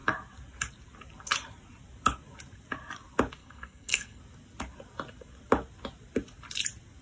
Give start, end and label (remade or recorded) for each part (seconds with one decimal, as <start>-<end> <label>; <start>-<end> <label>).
0.0-3.4 recorded; 3.4-4.2 remade; 4.2-7.0 recorded